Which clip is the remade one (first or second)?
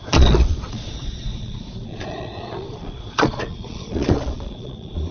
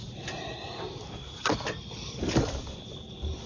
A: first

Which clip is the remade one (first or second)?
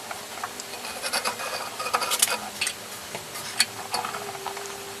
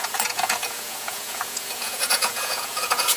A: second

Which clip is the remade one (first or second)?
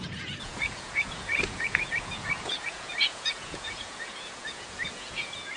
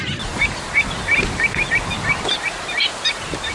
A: first